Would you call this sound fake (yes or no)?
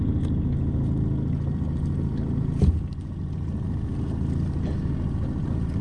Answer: no